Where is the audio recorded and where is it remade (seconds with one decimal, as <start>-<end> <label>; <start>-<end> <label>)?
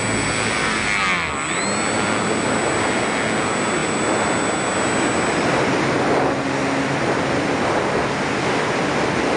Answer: 0.0-9.4 recorded